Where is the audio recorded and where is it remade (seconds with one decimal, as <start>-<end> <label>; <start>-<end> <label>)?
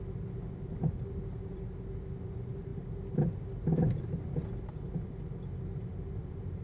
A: 0.0-6.6 recorded